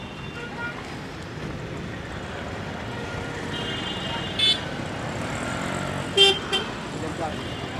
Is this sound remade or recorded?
recorded